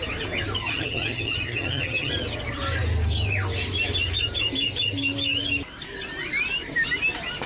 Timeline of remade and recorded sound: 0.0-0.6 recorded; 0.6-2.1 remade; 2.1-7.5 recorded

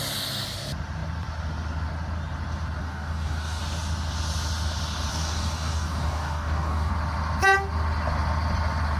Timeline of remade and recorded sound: 0.0-2.8 recorded; 2.8-3.6 remade; 3.6-5.1 recorded; 5.1-6.9 remade; 6.9-9.0 recorded

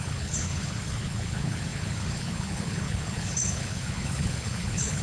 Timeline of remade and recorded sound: 0.0-5.0 remade

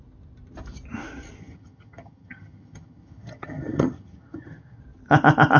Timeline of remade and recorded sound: 0.0-1.4 recorded; 1.4-4.8 remade; 4.8-5.6 recorded

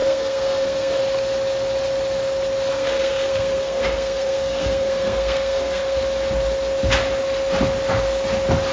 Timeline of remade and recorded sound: 0.0-1.0 remade; 1.0-2.7 recorded; 2.7-6.0 remade; 6.0-8.7 recorded

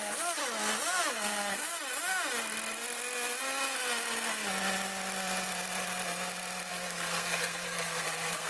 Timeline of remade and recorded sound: 0.0-0.4 remade; 0.4-1.1 recorded; 1.1-1.7 remade; 1.7-6.7 recorded; 6.7-8.5 remade

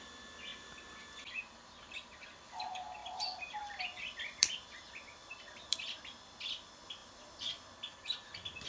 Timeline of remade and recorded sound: 0.0-3.0 recorded; 3.0-6.0 remade; 6.0-7.0 recorded; 7.0-8.7 remade

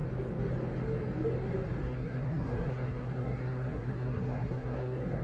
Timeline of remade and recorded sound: 0.0-1.8 recorded; 1.8-5.2 remade